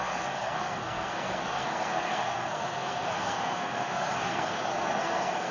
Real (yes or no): no